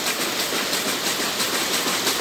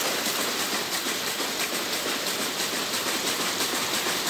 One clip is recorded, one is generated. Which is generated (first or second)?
second